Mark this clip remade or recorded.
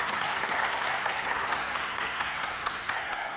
remade